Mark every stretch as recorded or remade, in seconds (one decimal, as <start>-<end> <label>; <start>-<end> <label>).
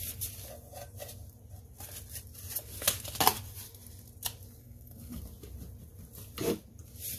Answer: 0.0-4.6 recorded; 4.6-5.2 remade; 5.2-7.2 recorded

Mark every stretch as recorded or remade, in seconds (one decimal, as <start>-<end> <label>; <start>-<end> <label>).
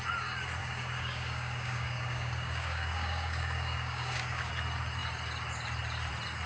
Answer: 0.0-0.6 recorded; 0.6-4.5 remade; 4.5-6.5 recorded